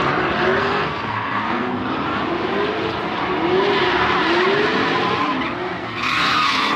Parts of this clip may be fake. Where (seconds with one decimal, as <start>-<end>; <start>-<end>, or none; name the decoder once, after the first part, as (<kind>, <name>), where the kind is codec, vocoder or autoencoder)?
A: 0.6-1.8 (codec, SNAC); 5.8-6.8